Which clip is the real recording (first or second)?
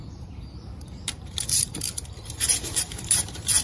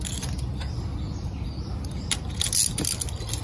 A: second